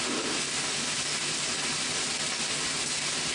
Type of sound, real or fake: real